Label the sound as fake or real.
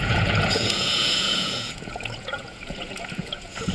fake